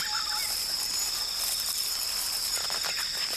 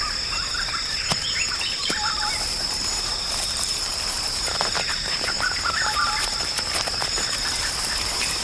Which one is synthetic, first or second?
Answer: second